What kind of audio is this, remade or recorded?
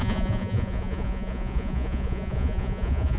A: remade